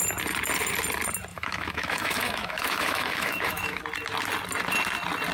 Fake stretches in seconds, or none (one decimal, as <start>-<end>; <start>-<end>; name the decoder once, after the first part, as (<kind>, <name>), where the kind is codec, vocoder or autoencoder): 1.3-3.8 (autoencoder, DAC-VAE)